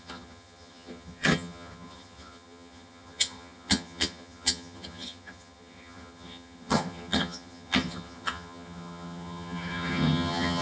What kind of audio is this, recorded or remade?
remade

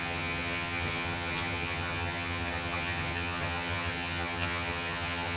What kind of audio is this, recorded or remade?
remade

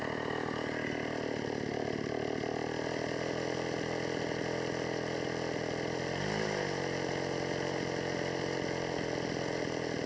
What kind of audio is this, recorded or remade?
recorded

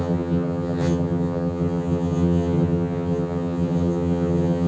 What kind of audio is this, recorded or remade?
remade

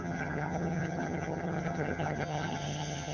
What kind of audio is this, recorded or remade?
remade